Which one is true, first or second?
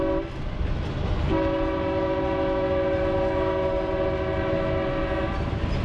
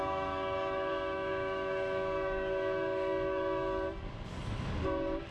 first